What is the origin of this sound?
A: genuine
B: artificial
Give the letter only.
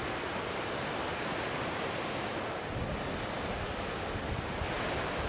A